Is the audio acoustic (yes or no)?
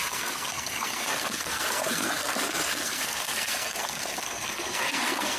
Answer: no